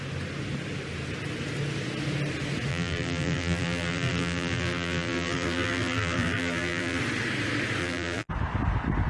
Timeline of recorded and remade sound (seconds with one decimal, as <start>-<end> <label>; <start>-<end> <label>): 0.0-2.7 recorded; 2.7-7.0 remade; 7.0-7.8 recorded; 7.8-8.3 remade; 8.3-9.1 recorded